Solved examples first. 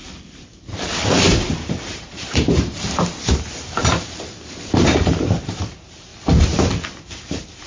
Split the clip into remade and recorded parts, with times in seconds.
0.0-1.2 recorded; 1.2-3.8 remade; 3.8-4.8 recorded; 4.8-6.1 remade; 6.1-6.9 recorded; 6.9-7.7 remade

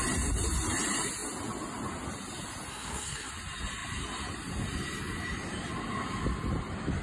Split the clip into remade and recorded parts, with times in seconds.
0.0-2.7 recorded; 2.7-3.3 remade; 3.3-7.0 recorded